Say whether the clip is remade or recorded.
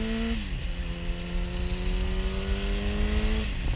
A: recorded